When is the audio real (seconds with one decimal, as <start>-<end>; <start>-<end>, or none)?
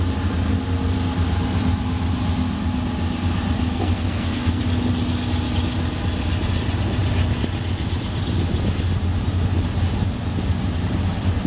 0.0-3.7; 4.6-11.5